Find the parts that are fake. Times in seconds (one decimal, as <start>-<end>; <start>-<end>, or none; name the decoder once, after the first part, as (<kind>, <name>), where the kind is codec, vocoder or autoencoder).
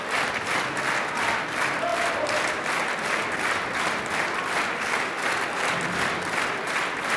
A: none